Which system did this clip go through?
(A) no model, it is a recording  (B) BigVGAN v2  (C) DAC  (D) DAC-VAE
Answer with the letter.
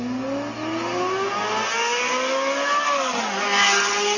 A